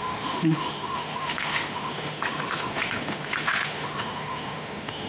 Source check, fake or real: fake